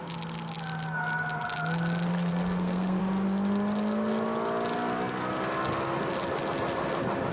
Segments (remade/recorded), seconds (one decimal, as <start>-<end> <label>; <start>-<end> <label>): 0.0-2.1 recorded; 2.1-3.0 remade; 3.0-7.3 recorded